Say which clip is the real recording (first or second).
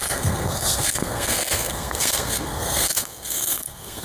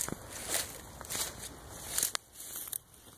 second